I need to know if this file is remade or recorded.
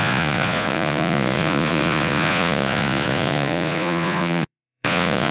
remade